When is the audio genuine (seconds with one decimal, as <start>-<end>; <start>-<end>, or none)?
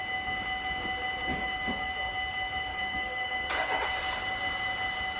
0.0-1.3; 1.9-2.7; 3.8-5.2